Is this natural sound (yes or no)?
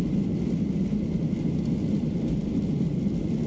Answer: yes